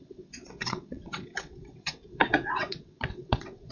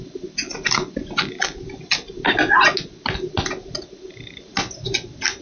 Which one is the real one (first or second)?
second